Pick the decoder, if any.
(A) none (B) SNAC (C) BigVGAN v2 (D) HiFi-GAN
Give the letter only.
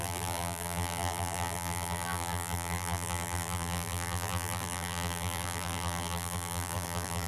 C